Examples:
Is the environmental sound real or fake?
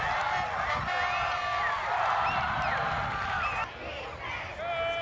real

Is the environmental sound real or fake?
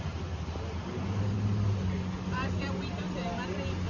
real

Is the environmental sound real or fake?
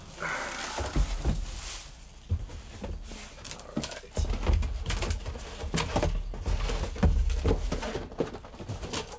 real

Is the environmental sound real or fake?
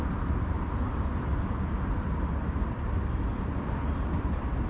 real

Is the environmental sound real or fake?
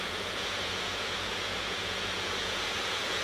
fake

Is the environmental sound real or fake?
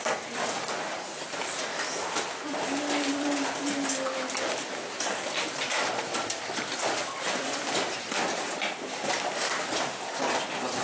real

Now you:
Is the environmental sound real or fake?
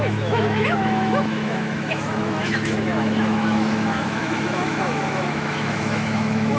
fake